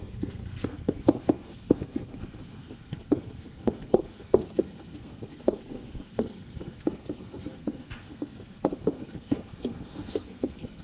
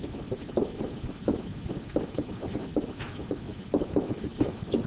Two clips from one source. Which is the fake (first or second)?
first